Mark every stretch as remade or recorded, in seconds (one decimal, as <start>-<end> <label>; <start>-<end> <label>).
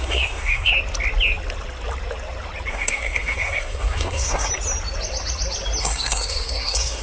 0.0-0.7 remade; 0.7-2.7 recorded; 2.7-4.5 remade; 4.5-5.8 recorded; 5.8-7.0 remade